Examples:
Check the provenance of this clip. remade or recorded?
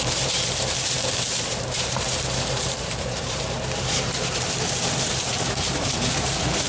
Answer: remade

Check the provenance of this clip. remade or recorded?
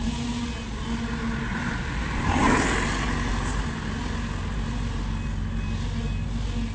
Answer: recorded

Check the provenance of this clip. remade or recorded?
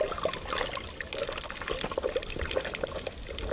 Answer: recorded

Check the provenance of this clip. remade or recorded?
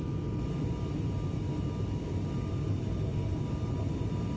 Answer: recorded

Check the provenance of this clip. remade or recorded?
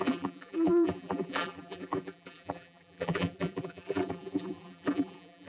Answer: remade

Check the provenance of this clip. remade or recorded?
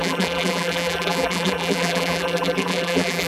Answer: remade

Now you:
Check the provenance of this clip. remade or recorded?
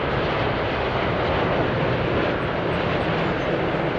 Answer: recorded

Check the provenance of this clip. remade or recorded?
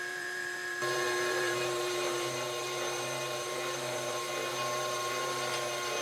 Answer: remade